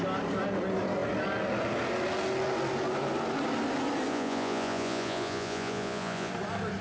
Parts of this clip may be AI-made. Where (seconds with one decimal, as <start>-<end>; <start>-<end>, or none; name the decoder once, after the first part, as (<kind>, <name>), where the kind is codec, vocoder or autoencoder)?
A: 4.1-6.3 (vocoder, Vocos)